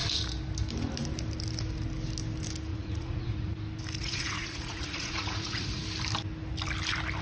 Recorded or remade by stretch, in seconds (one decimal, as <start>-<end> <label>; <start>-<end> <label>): 0.0-2.7 recorded; 2.7-3.6 remade; 3.6-4.0 recorded; 4.0-5.8 remade; 5.8-7.2 recorded